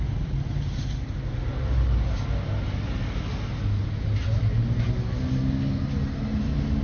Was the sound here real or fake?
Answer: real